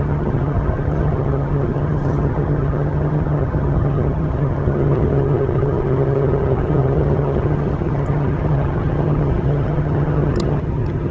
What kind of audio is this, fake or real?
fake